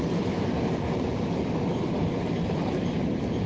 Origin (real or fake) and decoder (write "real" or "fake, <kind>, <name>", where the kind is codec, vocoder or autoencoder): real